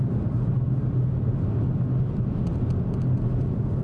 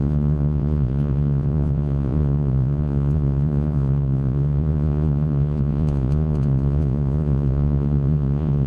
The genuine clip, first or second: first